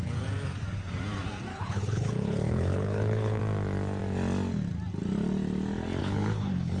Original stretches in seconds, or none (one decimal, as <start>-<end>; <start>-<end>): 0.0-1.5; 3.4-6.0